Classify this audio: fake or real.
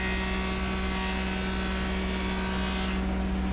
real